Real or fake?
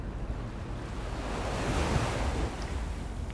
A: real